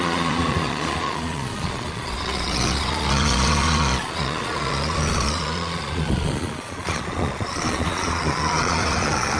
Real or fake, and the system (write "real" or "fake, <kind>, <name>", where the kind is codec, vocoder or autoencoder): fake, vocoder, Vocos